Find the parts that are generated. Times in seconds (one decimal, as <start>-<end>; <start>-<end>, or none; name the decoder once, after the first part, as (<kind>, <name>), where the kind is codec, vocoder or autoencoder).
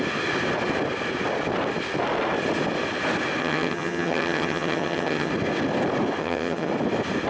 3.4-5.3 (vocoder, HiFi-GAN); 6.2-6.7